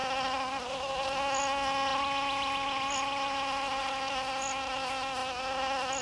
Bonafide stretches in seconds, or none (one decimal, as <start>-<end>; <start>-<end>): 0.0-6.0